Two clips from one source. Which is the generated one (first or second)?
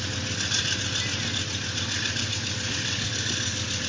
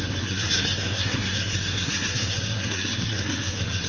second